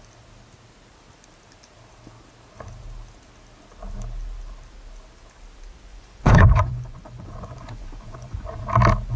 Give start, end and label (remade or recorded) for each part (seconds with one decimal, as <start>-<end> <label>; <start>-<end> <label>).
0.0-5.9 recorded; 5.9-8.6 remade; 8.6-9.2 recorded